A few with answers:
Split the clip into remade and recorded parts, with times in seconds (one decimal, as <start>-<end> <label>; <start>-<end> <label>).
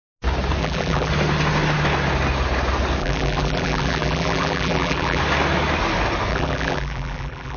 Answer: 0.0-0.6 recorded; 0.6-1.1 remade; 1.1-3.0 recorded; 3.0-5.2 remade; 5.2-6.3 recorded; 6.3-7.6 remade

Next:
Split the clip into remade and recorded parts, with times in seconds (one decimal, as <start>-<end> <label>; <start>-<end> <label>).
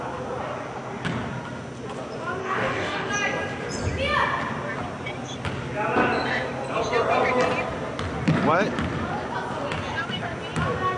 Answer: 0.0-2.4 recorded; 2.4-3.1 remade; 3.1-11.0 recorded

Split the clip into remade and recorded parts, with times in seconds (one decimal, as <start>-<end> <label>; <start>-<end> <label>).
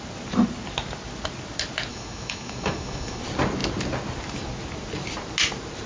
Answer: 0.0-1.9 recorded; 1.9-3.2 remade; 3.2-5.9 recorded